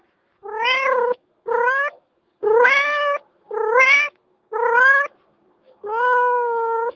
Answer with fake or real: fake